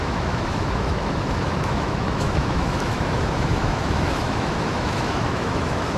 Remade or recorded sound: remade